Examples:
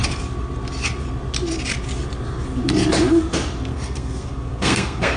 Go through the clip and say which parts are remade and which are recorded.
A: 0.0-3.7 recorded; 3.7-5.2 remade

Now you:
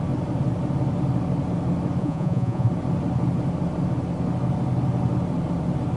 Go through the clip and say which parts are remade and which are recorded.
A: 0.0-2.0 recorded; 2.0-2.7 remade; 2.7-6.0 recorded

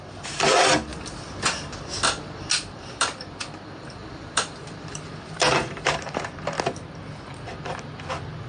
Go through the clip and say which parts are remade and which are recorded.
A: 0.0-4.0 recorded; 4.0-6.3 remade; 6.3-8.5 recorded

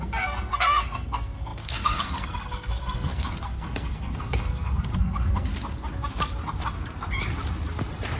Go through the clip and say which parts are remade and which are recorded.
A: 0.0-5.5 remade; 5.5-8.2 recorded

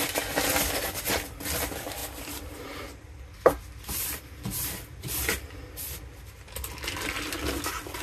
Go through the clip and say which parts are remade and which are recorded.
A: 0.0-2.0 recorded; 2.0-2.8 remade; 2.8-8.0 recorded

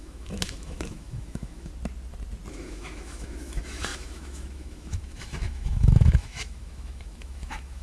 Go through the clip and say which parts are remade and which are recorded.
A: 0.0-1.7 remade; 1.7-2.5 recorded; 2.5-7.8 remade

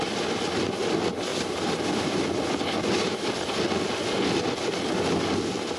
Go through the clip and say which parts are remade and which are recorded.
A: 0.0-1.3 recorded; 1.3-2.6 remade; 2.6-5.8 recorded